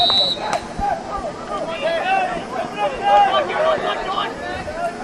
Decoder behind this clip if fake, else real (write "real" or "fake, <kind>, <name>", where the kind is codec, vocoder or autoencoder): real